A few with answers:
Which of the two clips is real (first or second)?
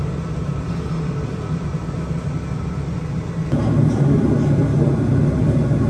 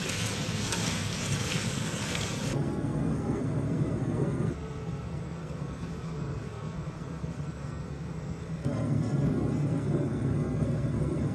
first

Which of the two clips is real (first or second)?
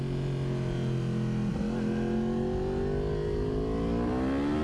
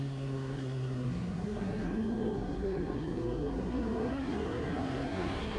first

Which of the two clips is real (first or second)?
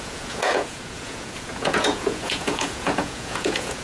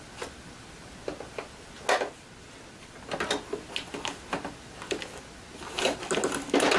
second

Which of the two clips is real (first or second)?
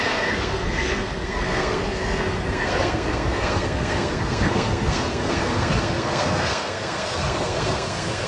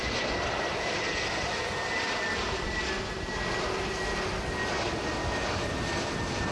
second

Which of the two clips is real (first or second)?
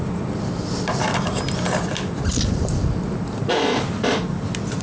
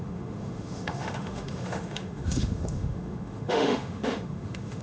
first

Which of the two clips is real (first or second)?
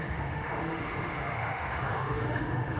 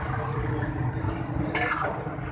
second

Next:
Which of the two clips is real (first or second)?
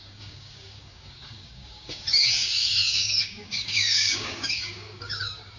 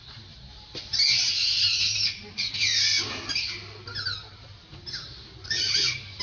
second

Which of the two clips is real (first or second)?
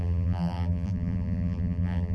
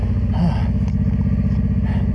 second